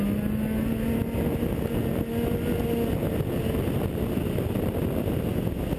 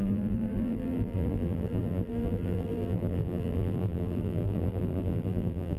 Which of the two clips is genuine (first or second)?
first